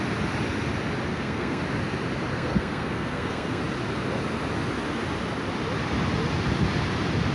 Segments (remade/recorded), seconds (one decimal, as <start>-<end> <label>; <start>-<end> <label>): 0.0-1.1 recorded; 1.1-1.6 remade; 1.6-2.3 recorded; 2.3-3.6 remade; 3.6-7.3 recorded